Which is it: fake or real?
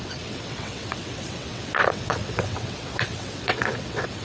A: fake